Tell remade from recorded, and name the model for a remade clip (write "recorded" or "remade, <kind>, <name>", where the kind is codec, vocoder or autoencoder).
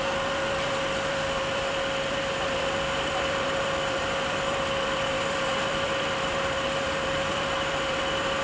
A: remade, vocoder, BigVGAN v2